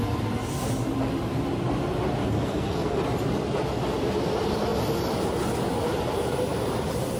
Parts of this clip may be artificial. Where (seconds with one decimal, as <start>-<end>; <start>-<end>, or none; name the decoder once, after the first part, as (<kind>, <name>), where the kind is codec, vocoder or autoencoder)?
2.2-3.0 (codec, SNAC)